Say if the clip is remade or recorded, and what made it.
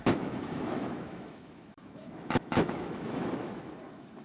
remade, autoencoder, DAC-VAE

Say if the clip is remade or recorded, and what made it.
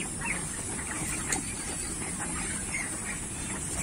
recorded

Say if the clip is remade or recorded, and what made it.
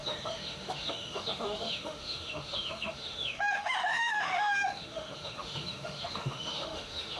remade, autoencoder, DAC-VAE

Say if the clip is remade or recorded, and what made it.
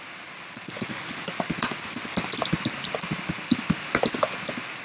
recorded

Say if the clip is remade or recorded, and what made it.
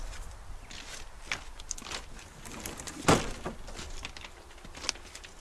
recorded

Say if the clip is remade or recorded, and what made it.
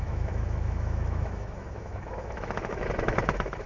remade, autoencoder, DAC-VAE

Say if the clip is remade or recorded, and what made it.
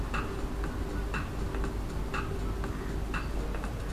recorded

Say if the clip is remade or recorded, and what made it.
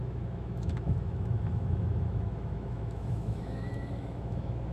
remade, autoencoder, DAC-VAE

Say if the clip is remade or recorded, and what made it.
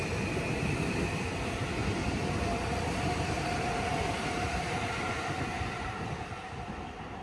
recorded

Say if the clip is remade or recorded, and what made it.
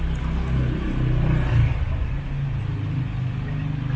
recorded